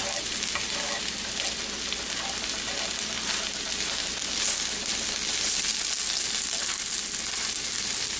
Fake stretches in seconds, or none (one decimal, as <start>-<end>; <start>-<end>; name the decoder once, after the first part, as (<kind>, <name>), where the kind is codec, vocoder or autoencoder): none